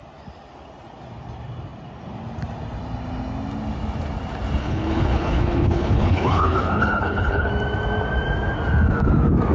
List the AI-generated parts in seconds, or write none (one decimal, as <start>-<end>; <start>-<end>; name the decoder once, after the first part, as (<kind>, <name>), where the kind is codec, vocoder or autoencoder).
4.6-7.5 (codec, HILCodec)